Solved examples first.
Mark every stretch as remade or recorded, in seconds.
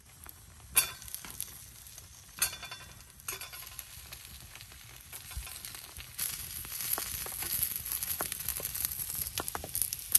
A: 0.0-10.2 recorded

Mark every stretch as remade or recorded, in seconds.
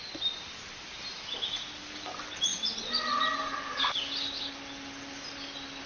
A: 0.0-5.9 recorded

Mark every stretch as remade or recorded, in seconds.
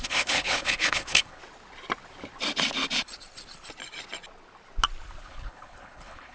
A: 0.0-1.4 remade; 1.4-5.2 recorded; 5.2-6.3 remade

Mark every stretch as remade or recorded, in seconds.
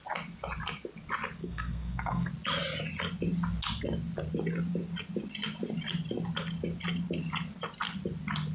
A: 0.0-1.4 recorded; 1.4-2.3 remade; 2.3-8.5 recorded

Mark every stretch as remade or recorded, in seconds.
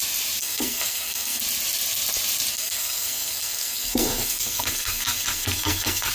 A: 0.0-0.4 recorded; 0.4-1.4 remade; 1.4-2.5 recorded; 2.5-6.1 remade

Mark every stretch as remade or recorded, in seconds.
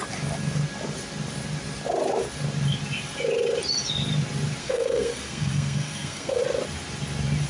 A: 0.0-4.6 recorded; 4.6-6.4 remade; 6.4-7.5 recorded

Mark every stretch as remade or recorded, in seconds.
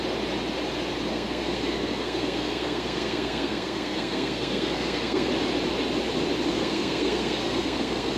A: 0.0-1.1 recorded; 1.1-5.3 remade; 5.3-6.5 recorded; 6.5-8.2 remade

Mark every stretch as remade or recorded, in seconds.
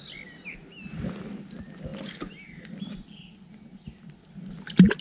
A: 0.0-5.0 recorded